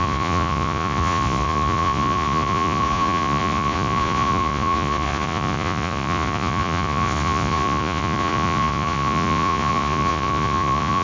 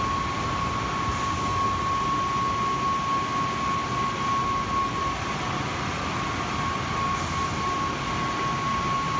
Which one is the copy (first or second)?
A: first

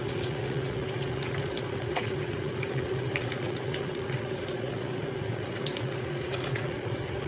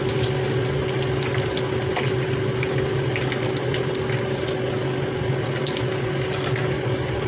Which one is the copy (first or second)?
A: first